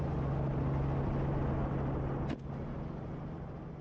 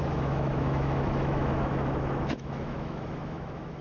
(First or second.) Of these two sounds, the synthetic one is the second